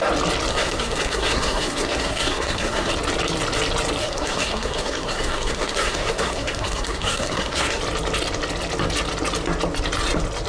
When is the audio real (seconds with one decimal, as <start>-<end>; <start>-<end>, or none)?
0.0-0.5; 2.9-4.0; 7.8-10.5